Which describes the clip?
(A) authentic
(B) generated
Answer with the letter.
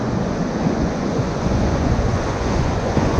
B